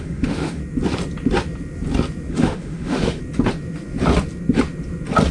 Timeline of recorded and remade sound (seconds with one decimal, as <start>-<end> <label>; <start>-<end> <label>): 0.0-0.6 remade; 0.6-2.3 recorded; 2.3-3.2 remade; 3.2-5.3 recorded